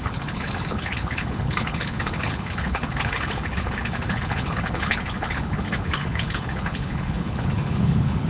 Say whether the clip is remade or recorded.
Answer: remade